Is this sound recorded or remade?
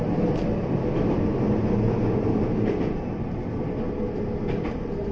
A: recorded